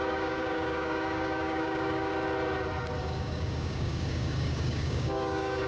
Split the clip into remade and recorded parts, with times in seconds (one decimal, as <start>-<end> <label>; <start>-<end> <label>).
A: 0.0-2.1 remade; 2.1-3.0 recorded; 3.0-5.7 remade